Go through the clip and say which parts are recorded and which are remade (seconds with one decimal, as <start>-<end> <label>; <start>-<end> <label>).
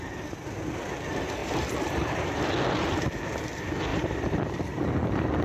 0.0-1.4 recorded; 1.4-2.4 remade; 2.4-3.9 recorded; 3.9-4.6 remade; 4.6-5.4 recorded